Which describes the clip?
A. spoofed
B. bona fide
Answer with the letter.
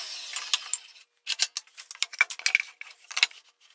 B